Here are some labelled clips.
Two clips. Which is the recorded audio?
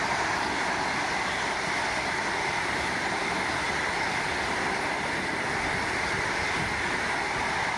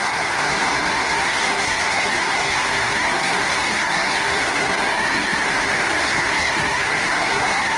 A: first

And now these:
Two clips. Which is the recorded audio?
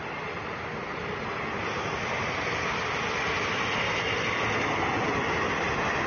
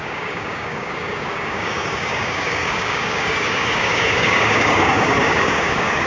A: first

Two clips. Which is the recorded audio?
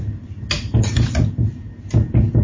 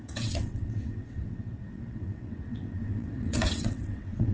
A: first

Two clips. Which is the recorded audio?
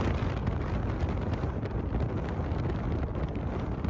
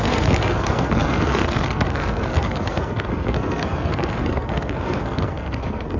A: first